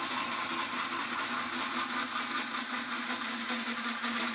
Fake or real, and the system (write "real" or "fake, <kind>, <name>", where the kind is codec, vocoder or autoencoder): real